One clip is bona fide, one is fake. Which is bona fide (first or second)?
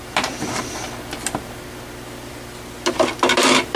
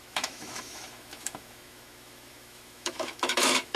first